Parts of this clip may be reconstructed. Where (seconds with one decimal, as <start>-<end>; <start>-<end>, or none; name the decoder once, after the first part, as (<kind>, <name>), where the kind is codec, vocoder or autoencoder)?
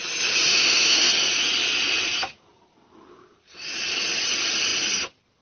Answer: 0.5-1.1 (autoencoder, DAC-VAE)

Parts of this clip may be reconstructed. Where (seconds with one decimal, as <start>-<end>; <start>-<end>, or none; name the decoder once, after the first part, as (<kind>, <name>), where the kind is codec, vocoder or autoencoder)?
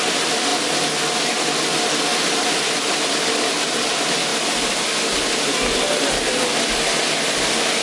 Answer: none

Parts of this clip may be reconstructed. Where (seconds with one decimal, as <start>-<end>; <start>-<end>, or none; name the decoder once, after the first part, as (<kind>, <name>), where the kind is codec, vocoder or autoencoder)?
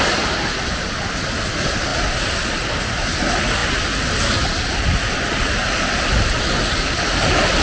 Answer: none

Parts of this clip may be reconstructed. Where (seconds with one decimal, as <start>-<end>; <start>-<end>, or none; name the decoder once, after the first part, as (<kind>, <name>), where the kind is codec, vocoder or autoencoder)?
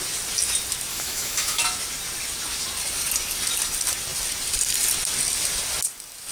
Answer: 0.9-1.6 (autoencoder, DAC-VAE)